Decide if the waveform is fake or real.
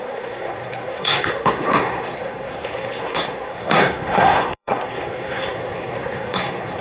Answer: fake